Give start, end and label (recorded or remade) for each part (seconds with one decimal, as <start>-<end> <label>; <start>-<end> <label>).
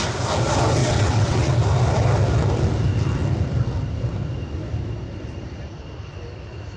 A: 0.0-0.8 recorded; 0.8-1.6 remade; 1.6-6.8 recorded